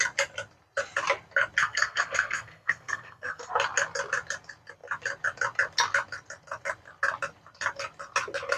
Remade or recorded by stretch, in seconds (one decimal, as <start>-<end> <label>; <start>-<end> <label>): 0.0-1.6 recorded; 1.6-3.5 remade; 3.5-8.6 recorded